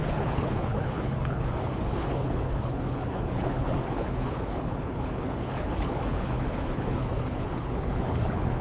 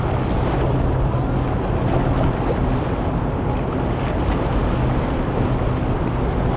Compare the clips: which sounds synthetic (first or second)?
first